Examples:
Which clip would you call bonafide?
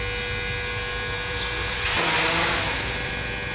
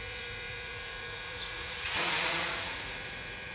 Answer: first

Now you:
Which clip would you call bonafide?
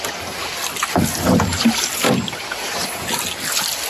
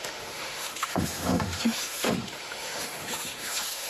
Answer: first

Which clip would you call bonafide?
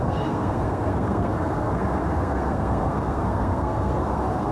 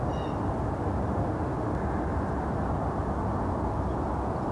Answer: second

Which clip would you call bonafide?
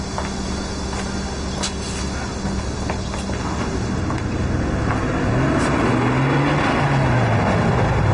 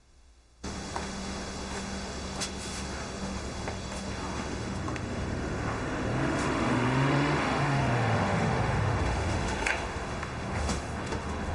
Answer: first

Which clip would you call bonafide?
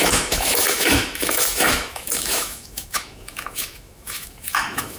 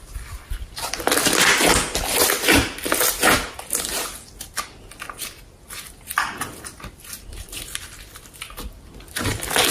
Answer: second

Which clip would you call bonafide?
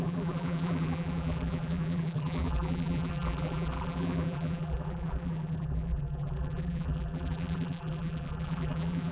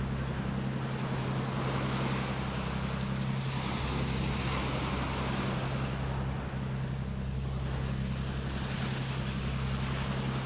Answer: second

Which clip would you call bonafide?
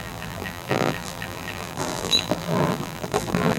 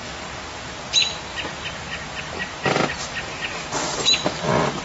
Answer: second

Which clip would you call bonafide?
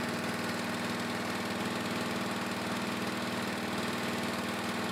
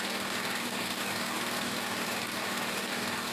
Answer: first